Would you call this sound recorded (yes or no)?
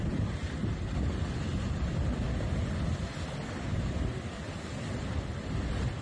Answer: yes